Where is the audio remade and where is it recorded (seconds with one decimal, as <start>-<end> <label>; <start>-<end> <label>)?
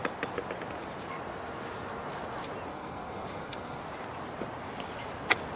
0.0-2.7 recorded; 2.7-3.8 remade; 3.8-5.6 recorded